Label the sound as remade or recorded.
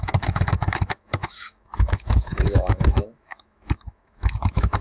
remade